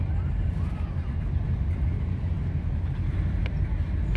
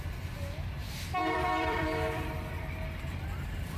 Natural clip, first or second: first